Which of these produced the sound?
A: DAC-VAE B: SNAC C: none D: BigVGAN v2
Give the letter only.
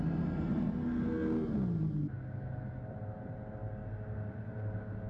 C